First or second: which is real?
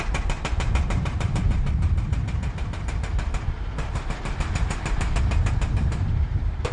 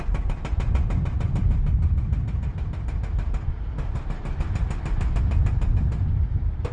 second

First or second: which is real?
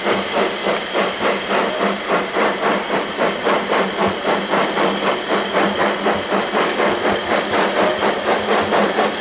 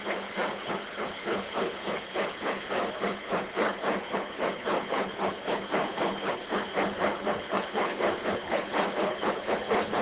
first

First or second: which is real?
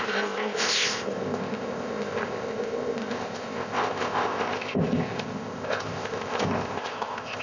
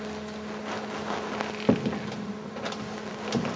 second